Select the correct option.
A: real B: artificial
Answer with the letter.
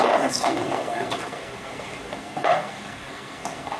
B